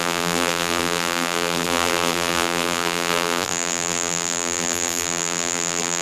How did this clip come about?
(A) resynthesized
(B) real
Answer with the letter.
A